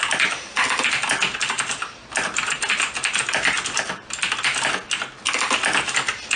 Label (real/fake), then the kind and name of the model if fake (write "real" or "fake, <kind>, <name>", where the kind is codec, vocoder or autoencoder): real